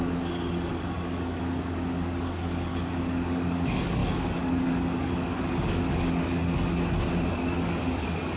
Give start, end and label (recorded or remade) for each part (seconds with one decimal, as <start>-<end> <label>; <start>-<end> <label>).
0.0-6.4 remade; 6.4-7.3 recorded; 7.3-8.4 remade